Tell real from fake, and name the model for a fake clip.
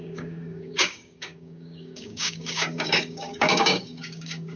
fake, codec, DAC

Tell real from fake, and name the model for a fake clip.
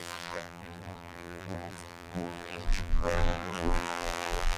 fake, vocoder, BigVGAN v2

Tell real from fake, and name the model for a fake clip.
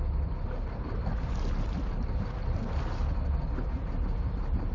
real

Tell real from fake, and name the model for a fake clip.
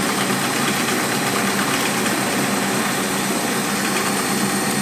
real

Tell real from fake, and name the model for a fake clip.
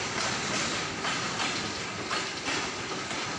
real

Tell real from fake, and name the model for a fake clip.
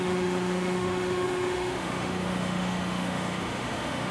fake, autoencoder, DAC-VAE